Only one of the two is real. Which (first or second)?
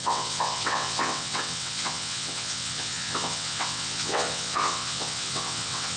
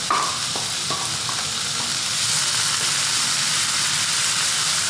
second